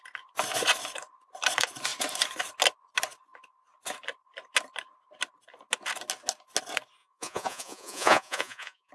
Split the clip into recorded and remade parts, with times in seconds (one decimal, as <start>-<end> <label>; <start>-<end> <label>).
0.0-7.0 recorded; 7.0-8.9 remade